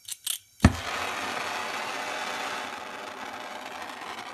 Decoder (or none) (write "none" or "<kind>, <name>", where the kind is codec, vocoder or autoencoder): none